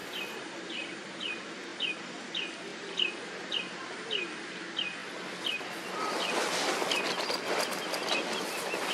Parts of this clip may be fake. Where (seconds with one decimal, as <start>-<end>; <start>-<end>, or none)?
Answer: 0.0-1.0; 1.7-2.3; 2.7-4.5